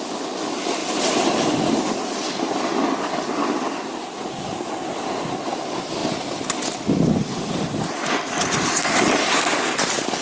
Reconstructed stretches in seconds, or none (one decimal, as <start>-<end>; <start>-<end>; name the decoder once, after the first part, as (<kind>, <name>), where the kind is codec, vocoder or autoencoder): none